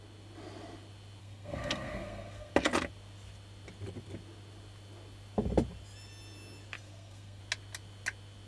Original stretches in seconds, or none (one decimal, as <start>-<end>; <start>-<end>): 0.0-1.2; 2.5-6.8; 7.4-8.5